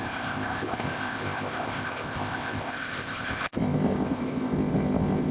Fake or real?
fake